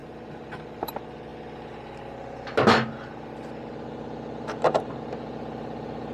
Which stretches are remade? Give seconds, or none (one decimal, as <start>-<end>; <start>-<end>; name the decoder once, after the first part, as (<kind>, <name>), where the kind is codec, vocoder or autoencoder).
0.0-0.9 (vocoder, BigVGAN v2)